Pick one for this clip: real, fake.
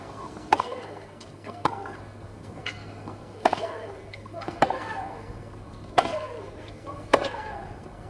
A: fake